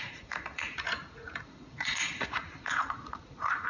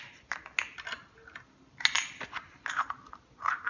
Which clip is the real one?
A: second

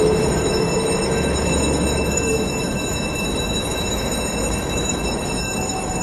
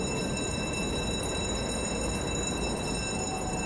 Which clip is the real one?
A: second